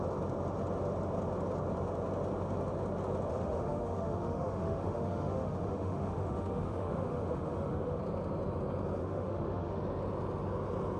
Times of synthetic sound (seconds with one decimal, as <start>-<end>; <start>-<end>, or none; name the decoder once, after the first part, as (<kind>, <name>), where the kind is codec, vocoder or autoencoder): 3.3-8.0 (autoencoder, DAC-VAE); 9.0-9.8